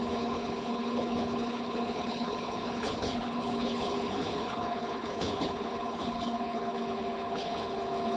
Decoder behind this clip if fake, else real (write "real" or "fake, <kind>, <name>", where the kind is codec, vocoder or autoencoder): fake, codec, HILCodec